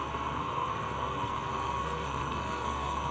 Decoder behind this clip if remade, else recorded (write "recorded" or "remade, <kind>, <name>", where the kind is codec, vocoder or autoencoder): remade, codec, SNAC